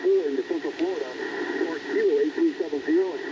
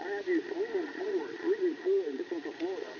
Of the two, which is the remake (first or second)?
second